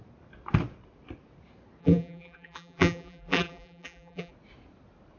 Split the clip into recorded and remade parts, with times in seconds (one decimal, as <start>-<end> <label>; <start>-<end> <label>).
0.0-1.8 recorded; 1.8-4.3 remade; 4.3-5.2 recorded